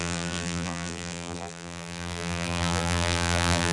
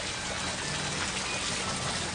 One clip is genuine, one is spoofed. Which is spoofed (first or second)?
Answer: first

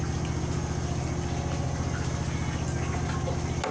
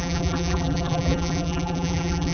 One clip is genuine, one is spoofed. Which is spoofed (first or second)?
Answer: second